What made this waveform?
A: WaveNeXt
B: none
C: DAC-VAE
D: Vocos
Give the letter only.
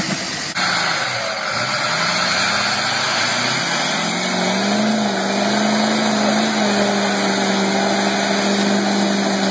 B